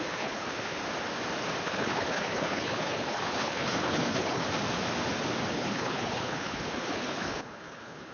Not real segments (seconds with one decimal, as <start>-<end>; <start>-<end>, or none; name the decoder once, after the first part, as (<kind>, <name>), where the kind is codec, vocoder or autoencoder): 0.0-0.8 (codec, HILCodec); 1.6-4.4; 5.5-8.1